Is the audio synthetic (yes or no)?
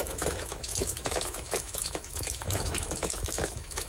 yes